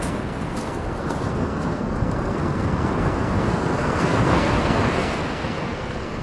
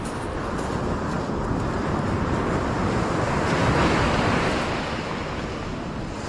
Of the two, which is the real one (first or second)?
second